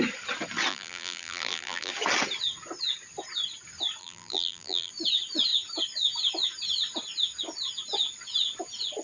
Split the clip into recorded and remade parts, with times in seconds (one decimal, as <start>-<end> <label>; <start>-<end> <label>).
0.0-0.7 recorded; 0.7-1.9 remade; 1.9-4.0 recorded; 4.0-4.9 remade; 4.9-9.0 recorded